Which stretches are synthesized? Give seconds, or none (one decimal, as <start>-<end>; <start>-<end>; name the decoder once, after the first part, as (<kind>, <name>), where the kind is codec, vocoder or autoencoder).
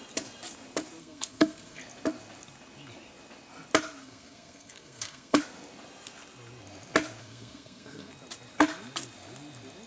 1.0-1.8 (codec, SNAC); 4.0-5.4; 7.2-8.1